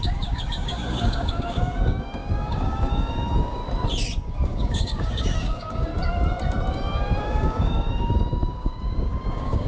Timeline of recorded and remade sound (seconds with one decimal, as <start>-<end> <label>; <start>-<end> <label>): 0.0-3.6 remade; 3.6-4.2 recorded; 4.2-5.9 remade; 5.9-6.7 recorded; 6.7-9.7 remade